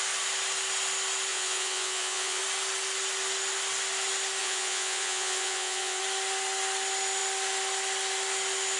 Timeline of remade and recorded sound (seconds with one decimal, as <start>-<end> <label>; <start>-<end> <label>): 0.0-1.3 recorded; 1.3-2.4 remade; 2.4-4.4 recorded; 4.4-6.0 remade; 6.0-8.8 recorded